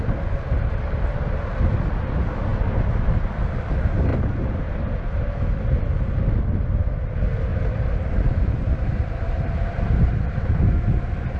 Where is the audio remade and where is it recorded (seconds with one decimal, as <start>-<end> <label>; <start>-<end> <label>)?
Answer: 0.0-4.1 recorded; 4.1-5.2 remade; 5.2-7.5 recorded; 7.5-10.4 remade; 10.4-11.4 recorded